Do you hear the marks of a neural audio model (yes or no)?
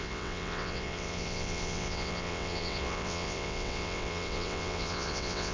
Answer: yes